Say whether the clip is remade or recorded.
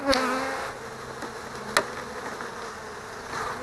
recorded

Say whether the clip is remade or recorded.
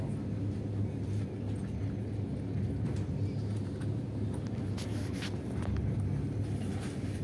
recorded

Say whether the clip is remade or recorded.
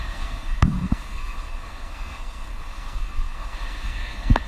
remade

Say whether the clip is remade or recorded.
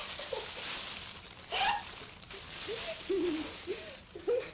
recorded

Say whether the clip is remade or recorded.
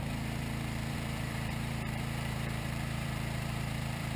remade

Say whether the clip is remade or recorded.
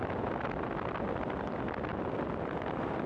recorded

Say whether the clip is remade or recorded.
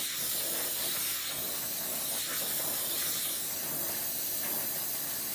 recorded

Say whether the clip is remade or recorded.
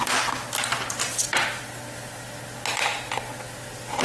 recorded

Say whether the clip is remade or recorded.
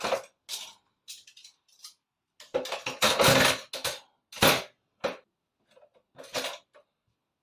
recorded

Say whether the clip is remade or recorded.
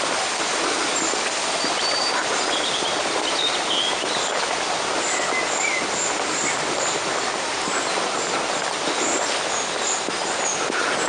recorded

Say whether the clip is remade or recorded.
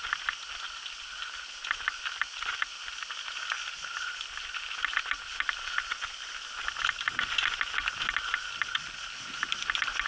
recorded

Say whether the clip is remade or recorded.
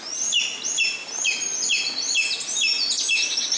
recorded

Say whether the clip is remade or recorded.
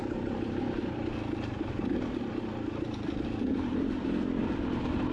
recorded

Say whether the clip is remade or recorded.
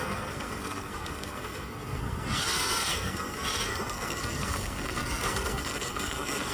remade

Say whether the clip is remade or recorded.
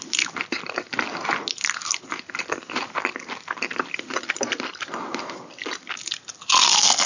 recorded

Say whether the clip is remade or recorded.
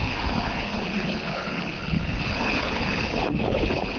remade